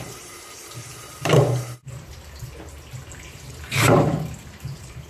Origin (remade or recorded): remade